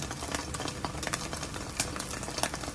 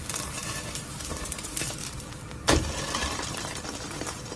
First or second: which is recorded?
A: first